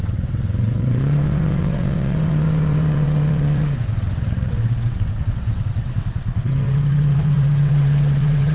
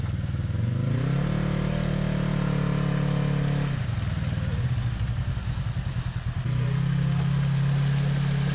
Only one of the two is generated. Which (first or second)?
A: first